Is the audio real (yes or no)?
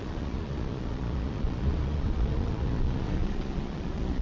no